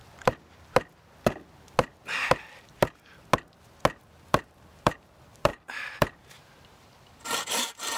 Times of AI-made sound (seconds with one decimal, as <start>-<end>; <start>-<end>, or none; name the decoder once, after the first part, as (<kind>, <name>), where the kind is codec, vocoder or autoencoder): 4.0-8.0 (vocoder, BigVGAN v2)